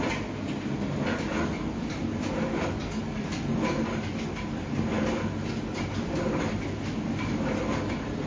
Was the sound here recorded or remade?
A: recorded